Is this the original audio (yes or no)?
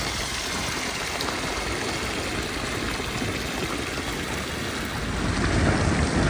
yes